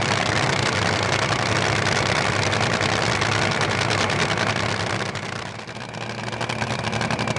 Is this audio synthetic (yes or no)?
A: no